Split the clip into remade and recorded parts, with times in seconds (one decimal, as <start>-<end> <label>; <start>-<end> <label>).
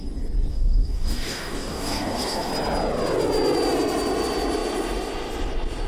0.0-0.5 recorded; 0.5-2.5 remade; 2.5-5.9 recorded